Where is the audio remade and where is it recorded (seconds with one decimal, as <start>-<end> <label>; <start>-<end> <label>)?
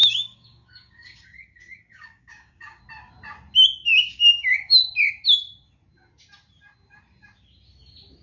0.0-2.8 remade; 2.8-3.9 recorded; 3.9-4.8 remade; 4.8-8.2 recorded